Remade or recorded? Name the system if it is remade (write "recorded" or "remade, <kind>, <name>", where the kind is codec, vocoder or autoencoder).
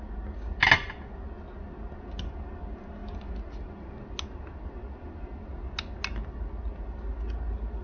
recorded